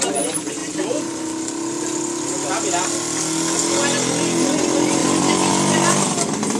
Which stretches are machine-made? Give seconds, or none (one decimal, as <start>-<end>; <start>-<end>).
none